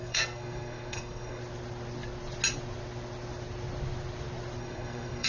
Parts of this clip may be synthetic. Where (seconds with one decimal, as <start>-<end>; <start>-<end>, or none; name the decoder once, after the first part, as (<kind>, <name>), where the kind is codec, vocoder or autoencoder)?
0.0-1.4 (codec, SNAC); 4.6-5.3